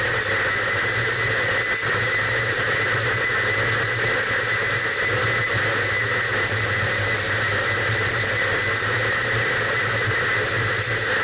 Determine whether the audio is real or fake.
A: real